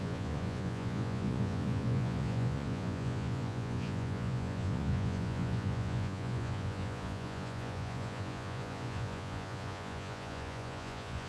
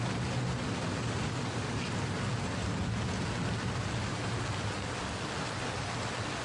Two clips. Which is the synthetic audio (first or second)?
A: first